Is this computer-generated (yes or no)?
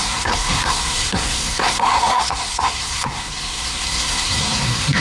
yes